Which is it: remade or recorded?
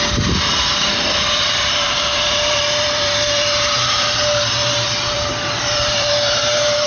remade